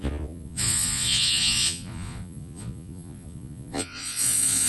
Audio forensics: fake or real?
fake